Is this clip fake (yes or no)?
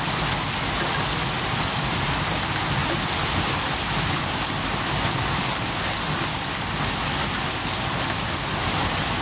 no